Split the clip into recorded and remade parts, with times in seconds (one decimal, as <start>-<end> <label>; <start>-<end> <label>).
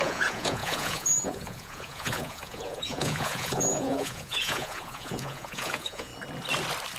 0.0-6.1 remade; 6.1-7.0 recorded